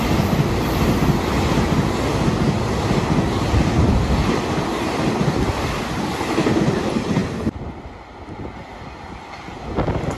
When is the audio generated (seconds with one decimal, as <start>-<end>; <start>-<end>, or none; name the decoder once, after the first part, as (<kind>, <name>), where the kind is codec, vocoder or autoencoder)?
none